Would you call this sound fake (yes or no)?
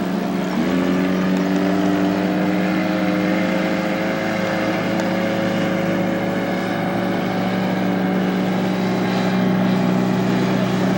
no